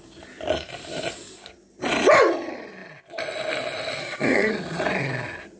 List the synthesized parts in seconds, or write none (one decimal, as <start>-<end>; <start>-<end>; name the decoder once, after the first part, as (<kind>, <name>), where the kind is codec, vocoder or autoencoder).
4.0-4.5 (codec, SNAC)